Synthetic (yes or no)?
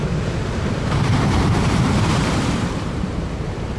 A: yes